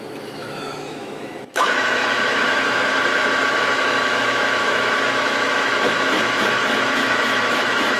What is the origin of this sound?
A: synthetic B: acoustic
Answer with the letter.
A